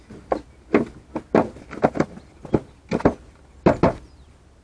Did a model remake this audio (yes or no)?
no